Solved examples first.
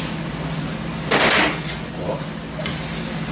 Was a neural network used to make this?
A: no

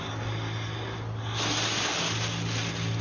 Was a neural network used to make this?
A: no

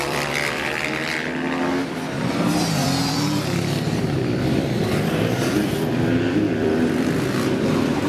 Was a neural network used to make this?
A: yes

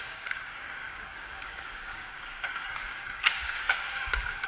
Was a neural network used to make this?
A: yes